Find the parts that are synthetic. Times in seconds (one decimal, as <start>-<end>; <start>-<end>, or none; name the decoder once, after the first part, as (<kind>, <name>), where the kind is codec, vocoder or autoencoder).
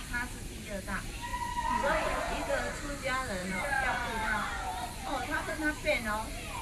1.3-2.3 (vocoder, Vocos); 3.4-4.1; 4.5-5.6